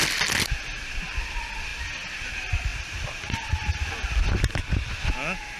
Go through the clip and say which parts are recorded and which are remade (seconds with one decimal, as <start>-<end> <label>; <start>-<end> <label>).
0.0-5.6 recorded